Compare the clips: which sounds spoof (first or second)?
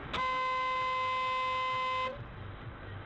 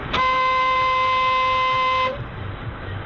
second